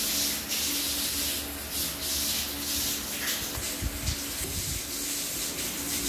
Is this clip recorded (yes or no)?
yes